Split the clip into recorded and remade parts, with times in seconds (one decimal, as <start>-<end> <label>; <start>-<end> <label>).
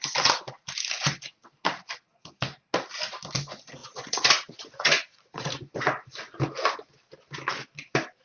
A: 0.0-3.8 recorded; 3.8-5.5 remade; 5.5-8.2 recorded